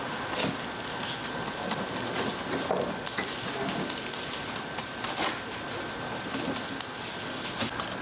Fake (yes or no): no